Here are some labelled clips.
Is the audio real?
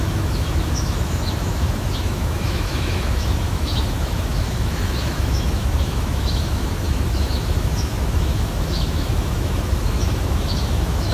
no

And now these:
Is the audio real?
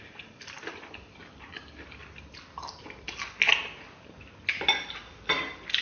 yes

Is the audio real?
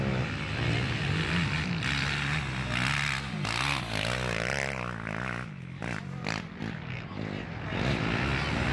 yes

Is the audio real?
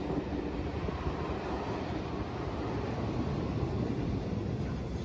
yes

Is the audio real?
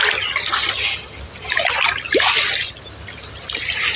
yes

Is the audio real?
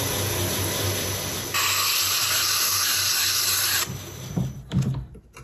yes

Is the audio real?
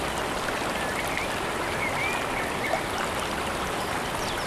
yes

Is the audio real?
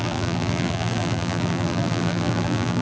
no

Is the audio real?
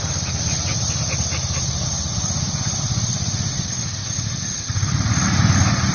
yes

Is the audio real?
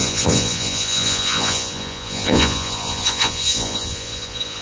no